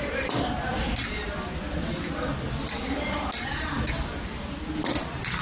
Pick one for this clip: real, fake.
real